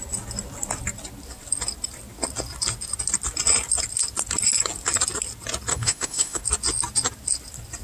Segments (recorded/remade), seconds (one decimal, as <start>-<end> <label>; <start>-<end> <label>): 0.0-5.7 recorded; 5.7-6.4 remade; 6.4-7.8 recorded